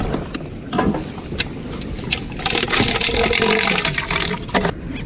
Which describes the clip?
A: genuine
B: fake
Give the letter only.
A